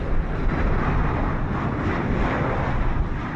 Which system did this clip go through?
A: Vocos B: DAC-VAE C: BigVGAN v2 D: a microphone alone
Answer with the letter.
D